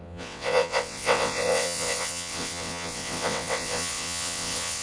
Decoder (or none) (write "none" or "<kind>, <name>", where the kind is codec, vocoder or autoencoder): vocoder, WaveNeXt